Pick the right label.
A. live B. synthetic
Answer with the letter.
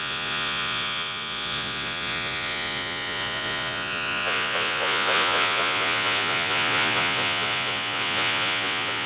B